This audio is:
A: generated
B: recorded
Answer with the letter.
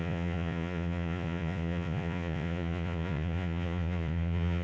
A